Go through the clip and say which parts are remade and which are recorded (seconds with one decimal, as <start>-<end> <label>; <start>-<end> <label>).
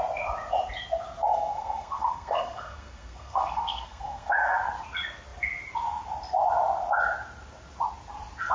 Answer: 0.0-1.3 recorded; 1.3-4.7 remade; 4.7-8.5 recorded